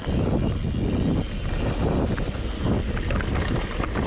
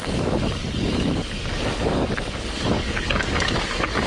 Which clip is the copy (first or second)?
second